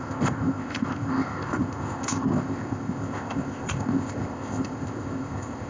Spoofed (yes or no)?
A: yes